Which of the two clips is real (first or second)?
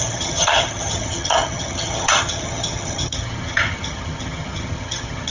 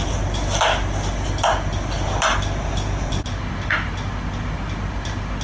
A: second